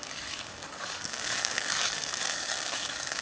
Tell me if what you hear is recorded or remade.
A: remade